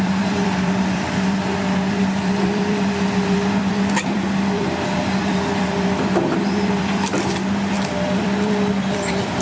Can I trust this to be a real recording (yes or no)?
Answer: no